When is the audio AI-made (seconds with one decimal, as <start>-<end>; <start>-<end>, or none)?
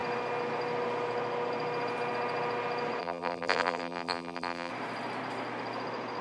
3.0-4.7